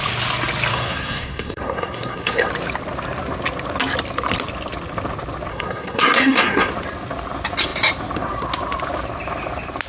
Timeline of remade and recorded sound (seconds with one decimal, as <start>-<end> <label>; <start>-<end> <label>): 0.0-0.7 recorded; 0.7-2.5 remade; 2.5-5.5 recorded; 5.5-6.7 remade; 6.7-9.9 recorded